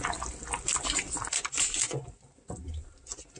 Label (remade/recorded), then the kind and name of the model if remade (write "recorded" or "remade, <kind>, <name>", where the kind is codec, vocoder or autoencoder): recorded